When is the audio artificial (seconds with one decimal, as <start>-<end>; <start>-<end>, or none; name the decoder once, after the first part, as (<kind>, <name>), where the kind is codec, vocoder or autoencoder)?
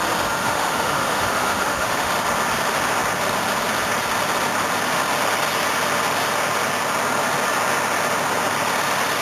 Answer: 0.4-2.1 (autoencoder, DAC-VAE)